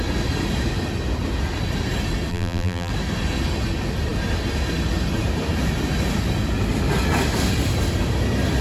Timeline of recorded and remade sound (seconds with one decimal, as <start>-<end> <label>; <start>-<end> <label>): 0.0-2.3 recorded; 2.3-2.9 remade; 2.9-8.6 recorded